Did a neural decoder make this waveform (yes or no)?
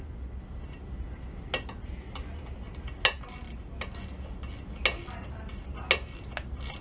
no